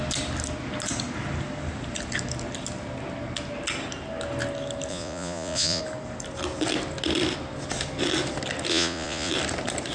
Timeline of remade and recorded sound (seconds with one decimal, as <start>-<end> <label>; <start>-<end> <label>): 0.0-4.9 recorded; 4.9-5.8 remade; 5.8-8.7 recorded; 8.7-9.3 remade; 9.3-9.9 recorded

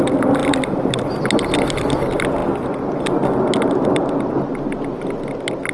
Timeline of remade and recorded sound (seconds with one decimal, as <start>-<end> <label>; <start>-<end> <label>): 0.0-5.7 recorded

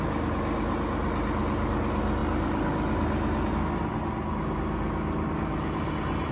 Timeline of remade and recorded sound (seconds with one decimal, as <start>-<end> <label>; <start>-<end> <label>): 0.0-6.3 recorded

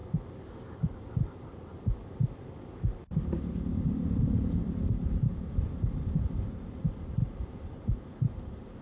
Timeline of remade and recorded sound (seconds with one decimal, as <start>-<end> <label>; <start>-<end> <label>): 0.0-8.8 recorded

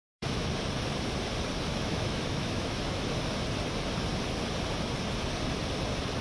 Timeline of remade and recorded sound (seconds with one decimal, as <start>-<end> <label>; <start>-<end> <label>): 0.0-0.5 remade; 0.5-1.7 recorded; 1.7-3.1 remade; 3.1-6.2 recorded

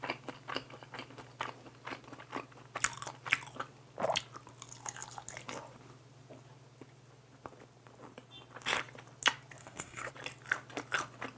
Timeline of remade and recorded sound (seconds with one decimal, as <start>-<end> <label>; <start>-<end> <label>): 0.0-9.6 recorded; 9.6-10.1 remade; 10.1-11.4 recorded